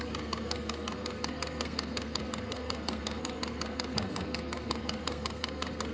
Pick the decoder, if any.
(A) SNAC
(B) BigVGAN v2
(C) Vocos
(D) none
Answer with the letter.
A